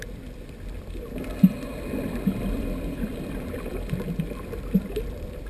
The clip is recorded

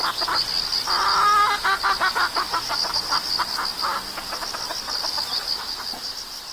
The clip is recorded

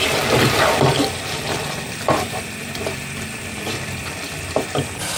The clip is remade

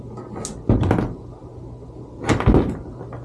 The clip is recorded